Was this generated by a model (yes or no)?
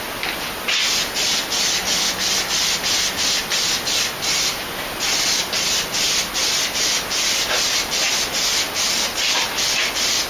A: no